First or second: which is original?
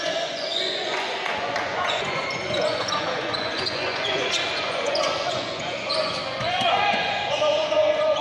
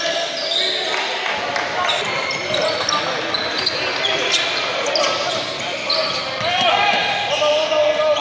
second